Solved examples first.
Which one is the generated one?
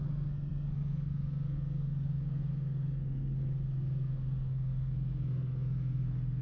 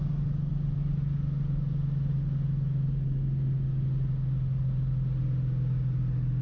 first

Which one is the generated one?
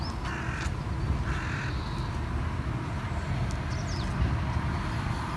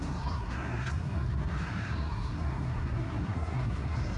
second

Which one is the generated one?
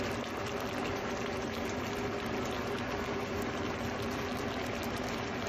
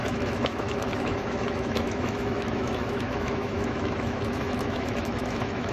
second